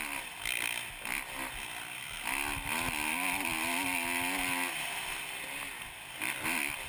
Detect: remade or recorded recorded